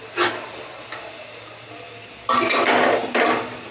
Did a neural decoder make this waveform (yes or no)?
no